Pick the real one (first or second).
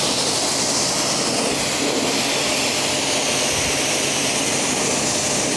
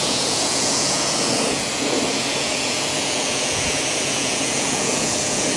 first